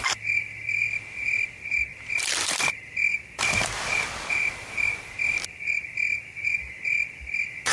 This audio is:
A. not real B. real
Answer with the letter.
B